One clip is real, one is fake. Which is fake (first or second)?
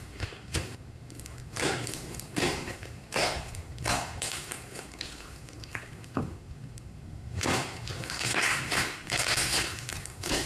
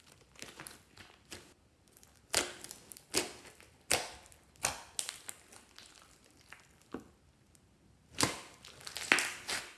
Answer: first